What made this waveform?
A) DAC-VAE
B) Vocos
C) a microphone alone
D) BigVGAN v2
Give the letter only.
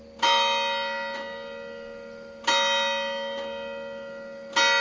C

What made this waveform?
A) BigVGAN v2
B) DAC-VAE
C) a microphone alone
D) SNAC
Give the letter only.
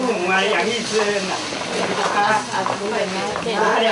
C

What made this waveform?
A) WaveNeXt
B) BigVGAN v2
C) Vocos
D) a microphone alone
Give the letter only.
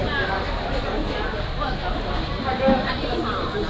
D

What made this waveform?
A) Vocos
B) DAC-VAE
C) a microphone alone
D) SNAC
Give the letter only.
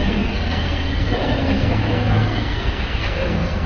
D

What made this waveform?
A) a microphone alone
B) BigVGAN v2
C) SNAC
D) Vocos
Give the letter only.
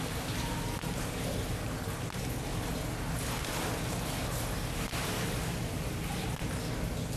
A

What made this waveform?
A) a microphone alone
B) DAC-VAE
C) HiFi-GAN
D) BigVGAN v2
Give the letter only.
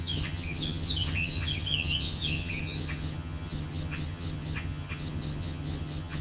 C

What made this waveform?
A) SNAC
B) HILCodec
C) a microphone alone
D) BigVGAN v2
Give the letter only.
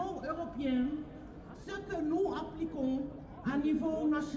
C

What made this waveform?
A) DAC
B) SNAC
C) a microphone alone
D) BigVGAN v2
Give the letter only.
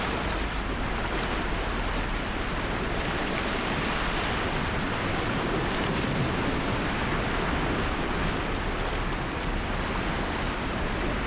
C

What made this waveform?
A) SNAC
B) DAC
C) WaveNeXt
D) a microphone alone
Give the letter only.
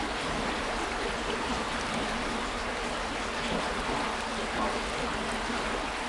D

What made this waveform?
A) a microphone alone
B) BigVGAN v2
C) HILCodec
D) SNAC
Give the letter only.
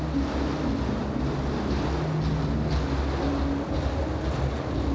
A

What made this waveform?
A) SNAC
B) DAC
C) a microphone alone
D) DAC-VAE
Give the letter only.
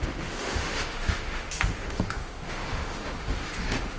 D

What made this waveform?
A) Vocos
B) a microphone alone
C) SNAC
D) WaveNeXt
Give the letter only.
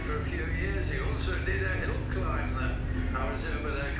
B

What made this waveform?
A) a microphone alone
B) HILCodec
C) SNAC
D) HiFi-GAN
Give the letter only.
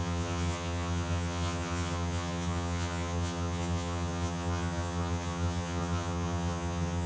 D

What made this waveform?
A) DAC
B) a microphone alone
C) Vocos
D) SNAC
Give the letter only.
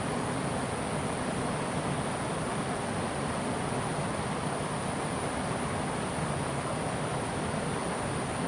B